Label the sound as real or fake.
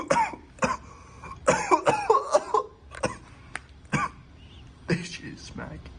real